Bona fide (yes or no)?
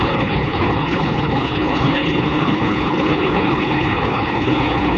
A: no